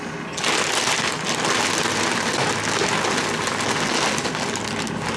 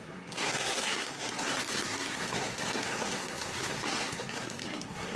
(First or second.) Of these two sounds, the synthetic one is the second